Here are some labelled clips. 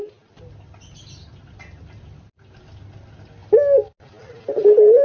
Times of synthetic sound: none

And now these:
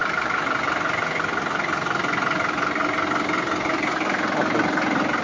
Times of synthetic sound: none

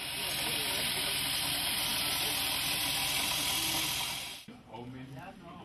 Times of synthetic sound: 4.3-5.6 (vocoder, BigVGAN v2)

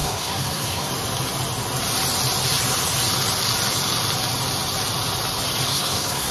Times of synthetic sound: 0.0-0.9 (codec, SNAC); 5.7-6.3

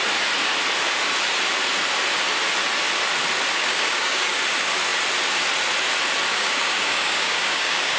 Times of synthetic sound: 3.5-4.4 (codec, DAC); 6.3-8.0

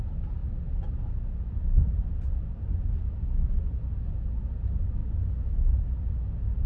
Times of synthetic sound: none